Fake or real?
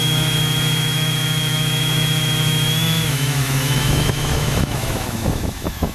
fake